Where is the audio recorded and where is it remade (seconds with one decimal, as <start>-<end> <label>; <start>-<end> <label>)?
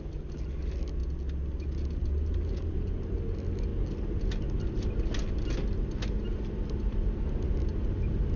0.0-8.4 recorded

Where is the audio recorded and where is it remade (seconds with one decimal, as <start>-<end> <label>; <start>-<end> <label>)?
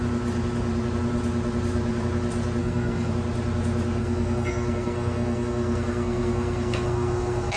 0.0-2.6 recorded; 2.6-3.1 remade; 3.1-4.0 recorded; 4.0-7.6 remade